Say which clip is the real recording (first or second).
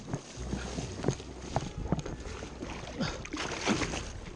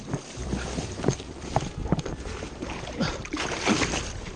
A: first